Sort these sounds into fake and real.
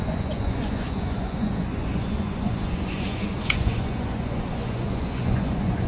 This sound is fake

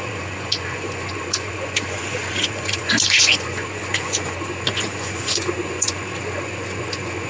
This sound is fake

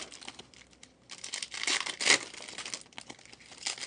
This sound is real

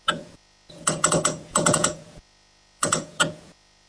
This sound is fake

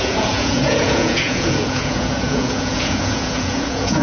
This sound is fake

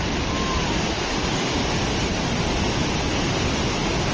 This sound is real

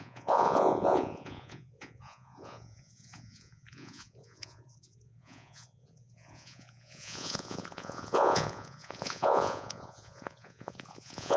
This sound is fake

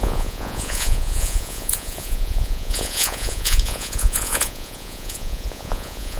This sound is fake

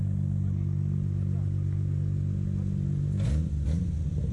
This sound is real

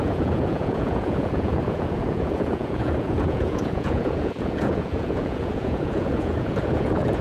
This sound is fake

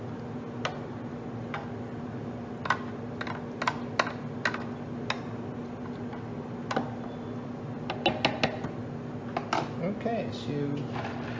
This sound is real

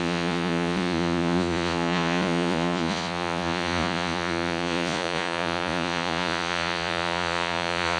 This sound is fake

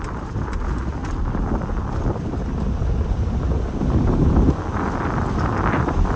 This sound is real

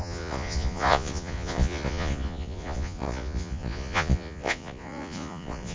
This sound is fake